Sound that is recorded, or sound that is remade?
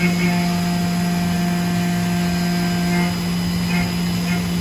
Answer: recorded